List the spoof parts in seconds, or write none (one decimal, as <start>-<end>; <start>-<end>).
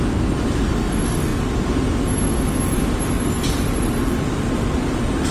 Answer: none